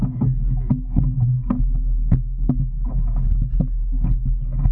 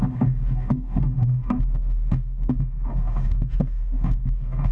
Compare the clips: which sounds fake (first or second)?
second